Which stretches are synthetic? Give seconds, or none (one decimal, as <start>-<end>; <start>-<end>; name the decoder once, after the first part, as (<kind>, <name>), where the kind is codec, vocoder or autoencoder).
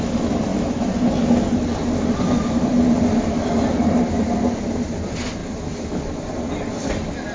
0.0-7.3 (vocoder, BigVGAN v2)